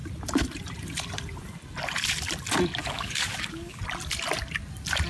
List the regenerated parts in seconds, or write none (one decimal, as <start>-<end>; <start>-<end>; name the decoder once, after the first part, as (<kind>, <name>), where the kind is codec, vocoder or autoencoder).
2.8-3.8 (codec, DAC)